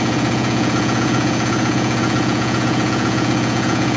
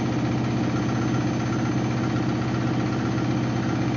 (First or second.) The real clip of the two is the second